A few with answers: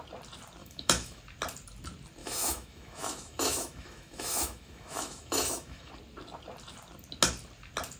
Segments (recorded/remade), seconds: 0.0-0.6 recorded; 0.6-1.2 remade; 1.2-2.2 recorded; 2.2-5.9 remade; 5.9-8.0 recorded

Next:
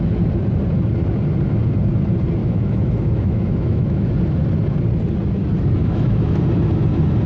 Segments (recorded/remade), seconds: 0.0-2.4 recorded; 2.4-4.1 remade; 4.1-5.8 recorded; 5.8-6.4 remade; 6.4-7.3 recorded

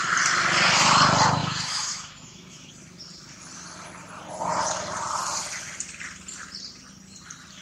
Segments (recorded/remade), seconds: 0.0-1.4 recorded; 1.4-2.7 remade; 2.7-7.6 recorded

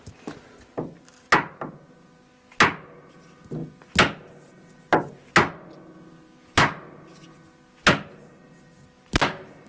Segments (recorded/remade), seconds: 0.0-9.7 recorded

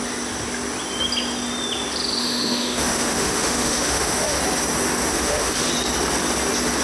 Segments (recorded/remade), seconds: 0.0-2.2 recorded; 2.2-4.4 remade; 4.4-5.1 recorded; 5.1-5.7 remade; 5.7-6.8 recorded

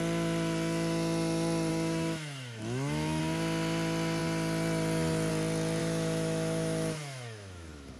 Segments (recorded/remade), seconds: 0.0-1.7 recorded; 1.7-3.2 remade; 3.2-5.8 recorded; 5.8-8.0 remade

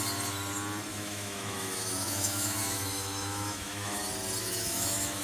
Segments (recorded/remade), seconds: 0.0-0.9 recorded; 0.9-4.0 remade; 4.0-4.4 recorded; 4.4-5.2 remade